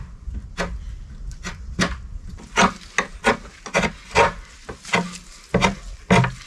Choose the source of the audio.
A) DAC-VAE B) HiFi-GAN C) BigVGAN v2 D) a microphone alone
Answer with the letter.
D